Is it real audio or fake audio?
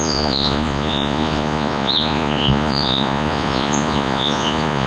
fake